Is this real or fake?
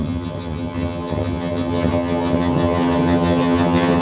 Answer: fake